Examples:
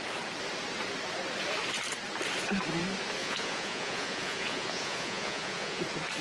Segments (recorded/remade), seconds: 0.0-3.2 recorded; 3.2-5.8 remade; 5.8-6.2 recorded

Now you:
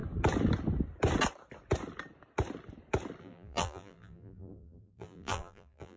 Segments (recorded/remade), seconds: 0.0-3.2 recorded; 3.2-6.0 remade

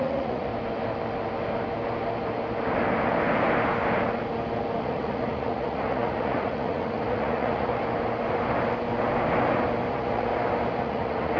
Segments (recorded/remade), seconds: 0.0-0.5 remade; 0.5-4.8 recorded; 4.8-7.7 remade; 7.7-9.9 recorded; 9.9-10.3 remade; 10.3-10.8 recorded; 10.8-11.4 remade

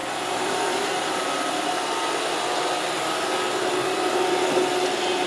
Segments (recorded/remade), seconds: 0.0-5.3 recorded

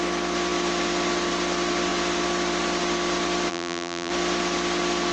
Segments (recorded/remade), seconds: 0.0-3.5 recorded; 3.5-4.1 remade; 4.1-5.1 recorded

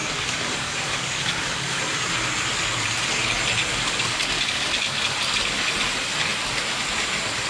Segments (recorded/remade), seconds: 0.0-1.8 remade; 1.8-3.7 recorded; 3.7-5.0 remade; 5.0-7.5 recorded